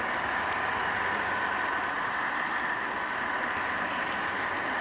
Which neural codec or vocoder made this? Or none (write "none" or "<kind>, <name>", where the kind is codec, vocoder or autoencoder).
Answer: none